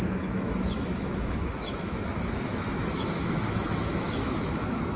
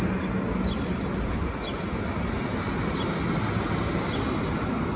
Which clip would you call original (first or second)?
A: second